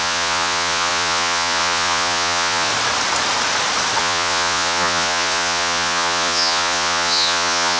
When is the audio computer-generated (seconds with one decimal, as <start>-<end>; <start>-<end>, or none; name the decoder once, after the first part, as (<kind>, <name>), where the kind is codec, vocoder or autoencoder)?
0.0-2.7 (vocoder, Vocos); 4.0-7.8